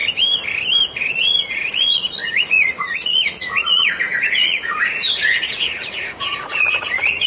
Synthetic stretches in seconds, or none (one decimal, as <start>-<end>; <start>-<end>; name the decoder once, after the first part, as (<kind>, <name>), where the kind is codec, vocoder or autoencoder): 1.0-7.3 (vocoder, Vocos)